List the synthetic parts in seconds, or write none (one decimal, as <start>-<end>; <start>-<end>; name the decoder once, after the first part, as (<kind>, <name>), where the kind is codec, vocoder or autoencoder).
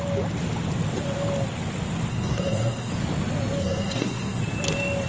2.1-2.9 (codec, SNAC); 3.6-4.4